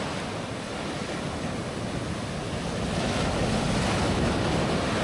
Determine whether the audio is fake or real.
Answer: real